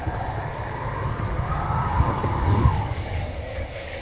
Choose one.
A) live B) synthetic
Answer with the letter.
B